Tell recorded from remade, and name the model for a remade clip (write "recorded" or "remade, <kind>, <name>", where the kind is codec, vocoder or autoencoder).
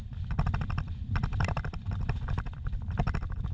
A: remade, vocoder, BigVGAN v2